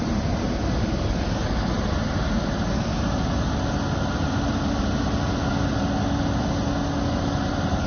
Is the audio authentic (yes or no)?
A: yes